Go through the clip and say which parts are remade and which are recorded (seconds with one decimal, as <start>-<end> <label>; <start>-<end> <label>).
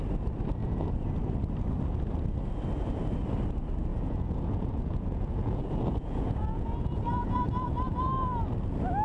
0.0-0.6 recorded; 0.6-1.1 remade; 1.1-3.9 recorded; 3.9-8.5 remade; 8.5-9.0 recorded